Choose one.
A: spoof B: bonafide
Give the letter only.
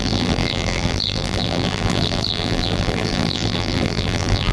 A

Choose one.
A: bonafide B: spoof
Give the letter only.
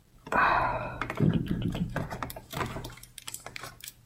B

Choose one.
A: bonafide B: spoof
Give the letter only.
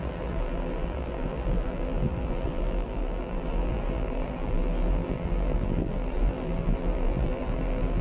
B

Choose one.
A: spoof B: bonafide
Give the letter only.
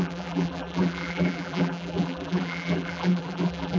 A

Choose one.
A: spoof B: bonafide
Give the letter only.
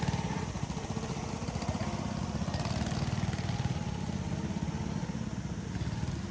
B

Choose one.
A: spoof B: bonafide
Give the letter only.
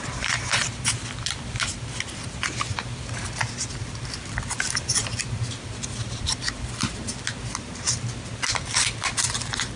A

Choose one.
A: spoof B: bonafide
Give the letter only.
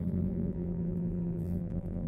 A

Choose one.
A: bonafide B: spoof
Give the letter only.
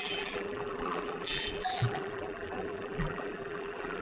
B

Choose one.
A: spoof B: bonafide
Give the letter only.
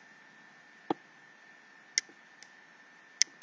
B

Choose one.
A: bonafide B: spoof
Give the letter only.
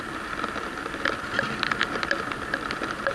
B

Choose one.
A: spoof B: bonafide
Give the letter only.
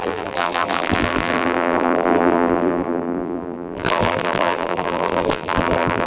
A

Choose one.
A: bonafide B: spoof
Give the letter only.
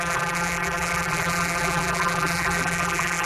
B